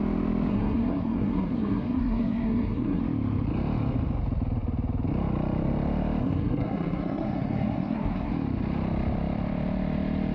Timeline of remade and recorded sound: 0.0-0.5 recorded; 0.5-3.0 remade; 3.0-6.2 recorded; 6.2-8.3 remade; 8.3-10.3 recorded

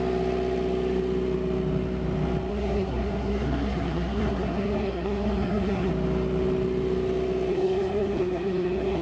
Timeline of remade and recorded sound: 0.0-2.5 recorded; 2.5-5.9 remade; 5.9-7.5 recorded; 7.5-9.0 remade

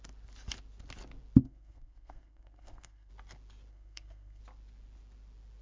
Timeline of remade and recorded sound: 0.0-1.4 recorded; 1.4-3.1 remade; 3.1-3.7 recorded; 3.7-4.4 remade; 4.4-5.6 recorded

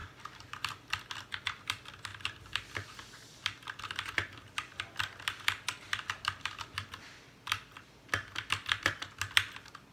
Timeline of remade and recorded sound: 0.0-9.9 recorded

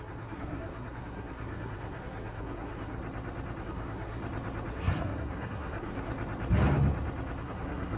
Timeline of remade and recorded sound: 0.0-3.0 remade; 3.0-3.6 recorded; 3.6-4.2 remade; 4.2-4.7 recorded; 4.7-6.1 remade; 6.1-7.4 recorded; 7.4-8.0 remade

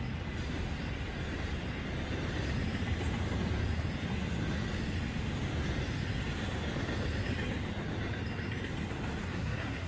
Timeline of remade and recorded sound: 0.0-9.2 recorded; 9.2-9.9 remade